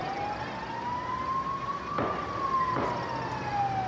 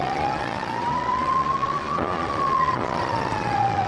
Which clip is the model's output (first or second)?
second